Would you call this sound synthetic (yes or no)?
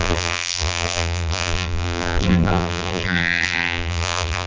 yes